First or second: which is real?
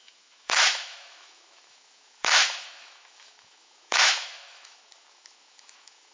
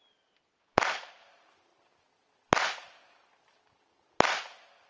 second